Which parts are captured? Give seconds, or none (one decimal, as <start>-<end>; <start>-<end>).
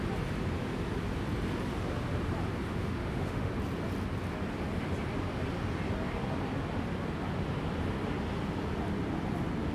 0.0-2.7; 3.5-9.7